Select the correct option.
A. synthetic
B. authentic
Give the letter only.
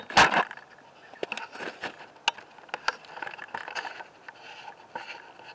B